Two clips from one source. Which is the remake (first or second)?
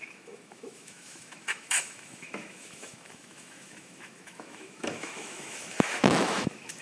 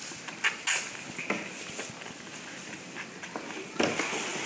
first